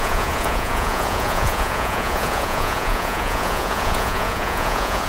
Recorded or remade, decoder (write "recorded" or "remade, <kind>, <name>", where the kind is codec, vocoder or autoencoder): remade, vocoder, Vocos